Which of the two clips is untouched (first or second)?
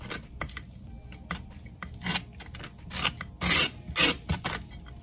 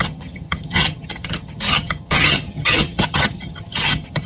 first